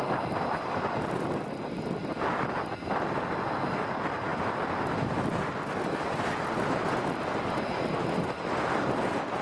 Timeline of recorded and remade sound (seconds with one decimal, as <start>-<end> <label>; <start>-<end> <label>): 0.0-9.4 recorded